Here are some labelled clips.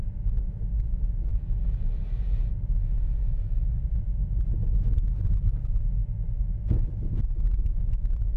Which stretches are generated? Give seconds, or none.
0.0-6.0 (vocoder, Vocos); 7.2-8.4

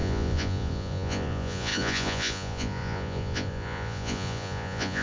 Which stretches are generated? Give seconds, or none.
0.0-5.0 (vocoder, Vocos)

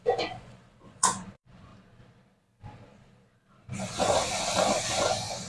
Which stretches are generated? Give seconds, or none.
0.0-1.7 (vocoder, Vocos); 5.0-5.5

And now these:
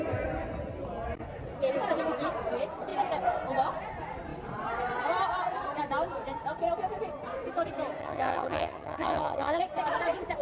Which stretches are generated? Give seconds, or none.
8.0-9.6 (vocoder, HiFi-GAN)

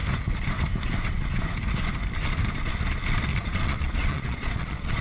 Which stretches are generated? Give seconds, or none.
3.3-5.0 (vocoder, Vocos)

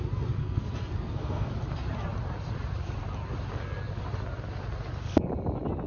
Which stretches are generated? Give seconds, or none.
0.4-1.5 (codec, SNAC)

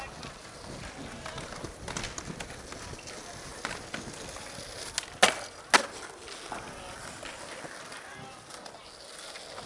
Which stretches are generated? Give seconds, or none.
3.5-4.1 (vocoder, BigVGAN v2)

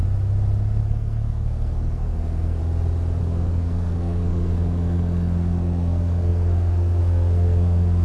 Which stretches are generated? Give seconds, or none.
0.8-2.6 (codec, SNAC); 3.2-8.0